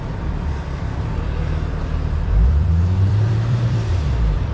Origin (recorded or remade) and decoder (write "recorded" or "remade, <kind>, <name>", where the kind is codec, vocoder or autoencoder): remade, vocoder, BigVGAN v2